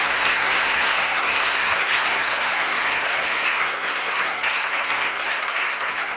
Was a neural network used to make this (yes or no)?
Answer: yes